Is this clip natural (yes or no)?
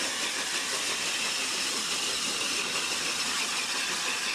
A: yes